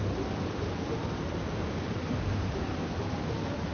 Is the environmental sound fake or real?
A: real